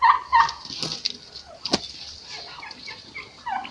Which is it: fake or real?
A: real